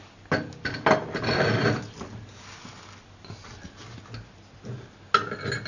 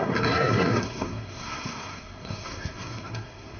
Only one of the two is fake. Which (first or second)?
second